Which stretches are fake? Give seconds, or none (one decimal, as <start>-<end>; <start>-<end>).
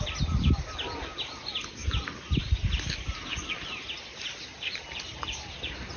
none